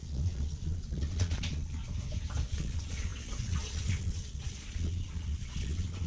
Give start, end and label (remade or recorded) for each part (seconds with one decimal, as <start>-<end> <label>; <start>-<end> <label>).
0.0-1.8 remade; 1.8-2.5 recorded; 2.5-6.1 remade